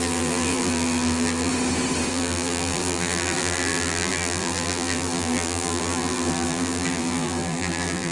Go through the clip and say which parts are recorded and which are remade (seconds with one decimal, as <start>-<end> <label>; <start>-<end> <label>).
0.0-1.5 remade; 1.5-2.1 recorded; 2.1-8.1 remade